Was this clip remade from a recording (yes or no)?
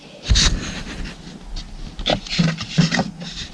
no